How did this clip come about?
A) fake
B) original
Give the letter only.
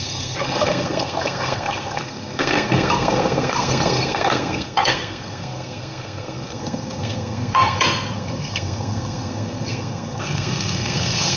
A